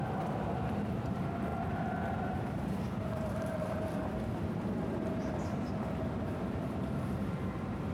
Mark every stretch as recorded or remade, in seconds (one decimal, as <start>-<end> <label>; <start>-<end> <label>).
0.0-1.5 remade; 1.5-2.3 recorded; 2.3-4.0 remade; 4.0-6.2 recorded; 6.2-7.9 remade